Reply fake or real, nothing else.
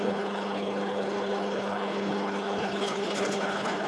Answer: fake